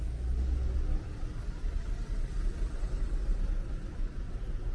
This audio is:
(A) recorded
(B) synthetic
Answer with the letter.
A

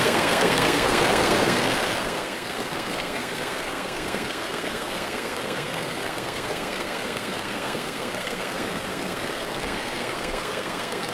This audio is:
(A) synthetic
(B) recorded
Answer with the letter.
A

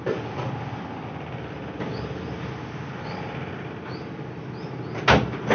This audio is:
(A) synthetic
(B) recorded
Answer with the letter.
B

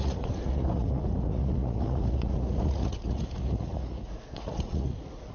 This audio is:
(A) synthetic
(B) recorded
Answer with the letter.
A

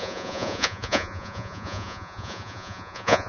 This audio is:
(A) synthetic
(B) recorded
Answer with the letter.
A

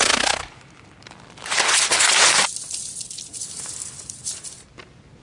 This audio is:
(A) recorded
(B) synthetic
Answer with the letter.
A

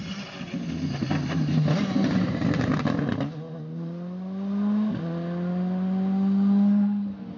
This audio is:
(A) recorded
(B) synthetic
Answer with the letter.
A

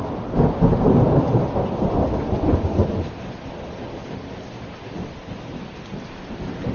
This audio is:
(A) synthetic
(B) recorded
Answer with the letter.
B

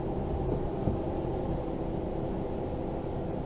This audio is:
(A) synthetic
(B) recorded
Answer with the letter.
B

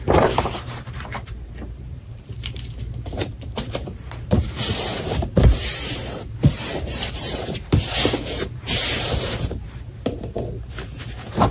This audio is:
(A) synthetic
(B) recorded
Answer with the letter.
A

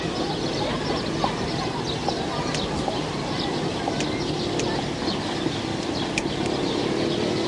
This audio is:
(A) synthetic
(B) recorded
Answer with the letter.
A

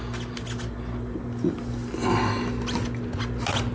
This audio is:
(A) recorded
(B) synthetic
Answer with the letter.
A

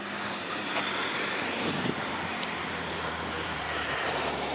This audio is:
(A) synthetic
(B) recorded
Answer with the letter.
A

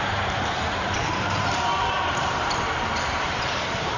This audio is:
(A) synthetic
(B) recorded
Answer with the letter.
A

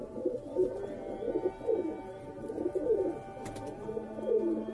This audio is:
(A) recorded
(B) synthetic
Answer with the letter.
A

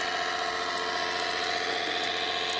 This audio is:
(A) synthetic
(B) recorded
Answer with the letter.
B